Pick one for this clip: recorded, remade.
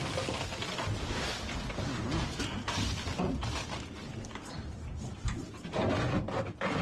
recorded